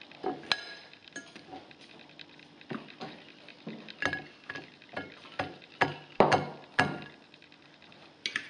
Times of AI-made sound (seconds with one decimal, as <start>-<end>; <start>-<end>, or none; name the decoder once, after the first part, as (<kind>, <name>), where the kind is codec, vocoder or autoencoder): none